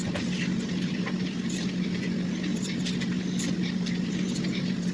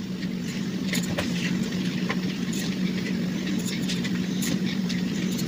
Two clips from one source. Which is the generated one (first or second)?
second